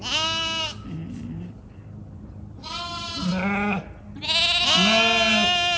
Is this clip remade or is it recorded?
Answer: recorded